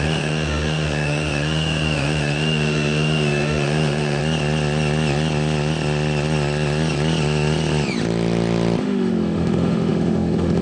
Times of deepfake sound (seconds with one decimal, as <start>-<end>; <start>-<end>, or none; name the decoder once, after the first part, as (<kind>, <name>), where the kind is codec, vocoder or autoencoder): 0.0-4.2 (autoencoder, DAC-VAE); 8.8-10.6